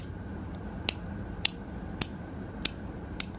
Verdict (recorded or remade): recorded